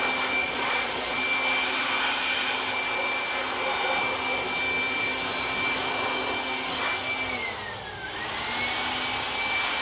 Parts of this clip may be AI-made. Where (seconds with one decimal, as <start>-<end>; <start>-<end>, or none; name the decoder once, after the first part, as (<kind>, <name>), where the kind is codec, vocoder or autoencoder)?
0.4-1.2 (vocoder, Vocos)